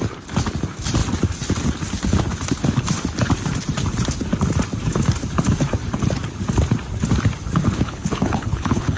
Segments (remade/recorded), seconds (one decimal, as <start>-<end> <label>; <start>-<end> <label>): 0.0-7.6 recorded; 7.6-9.0 remade